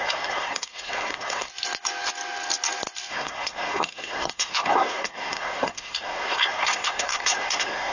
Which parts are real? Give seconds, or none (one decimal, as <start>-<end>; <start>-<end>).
1.5-3.1